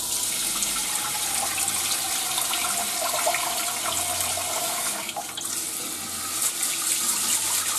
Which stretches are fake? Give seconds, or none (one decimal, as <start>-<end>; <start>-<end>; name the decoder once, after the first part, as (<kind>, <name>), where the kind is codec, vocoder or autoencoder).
4.6-5.3 (codec, DAC)

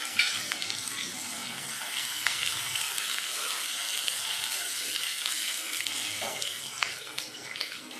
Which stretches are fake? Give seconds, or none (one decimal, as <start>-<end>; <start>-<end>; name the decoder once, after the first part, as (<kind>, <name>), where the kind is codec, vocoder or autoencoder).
0.0-8.0 (codec, SNAC)

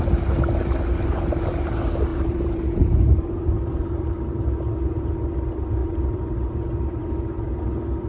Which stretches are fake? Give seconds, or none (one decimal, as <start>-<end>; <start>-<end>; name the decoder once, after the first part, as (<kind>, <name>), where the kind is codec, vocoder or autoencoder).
0.9-1.7 (vocoder, BigVGAN v2); 2.1-4.1; 5.8-7.0

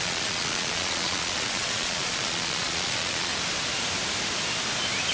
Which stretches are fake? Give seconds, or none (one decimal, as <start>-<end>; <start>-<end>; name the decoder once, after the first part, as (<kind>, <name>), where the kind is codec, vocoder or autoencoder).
0.0-3.3 (vocoder, Vocos)